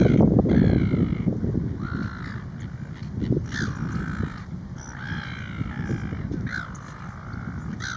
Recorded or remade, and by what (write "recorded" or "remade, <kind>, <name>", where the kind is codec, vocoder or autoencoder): recorded